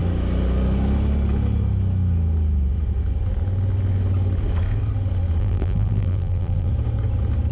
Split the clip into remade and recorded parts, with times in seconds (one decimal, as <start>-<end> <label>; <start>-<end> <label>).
0.0-5.4 recorded; 5.4-6.7 remade; 6.7-7.5 recorded